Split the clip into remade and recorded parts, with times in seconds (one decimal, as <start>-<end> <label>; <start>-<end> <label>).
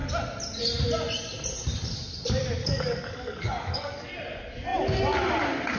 0.0-2.6 recorded; 2.6-4.1 remade; 4.1-5.8 recorded